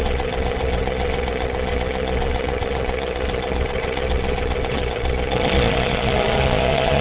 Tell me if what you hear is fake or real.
fake